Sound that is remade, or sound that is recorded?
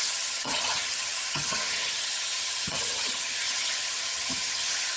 remade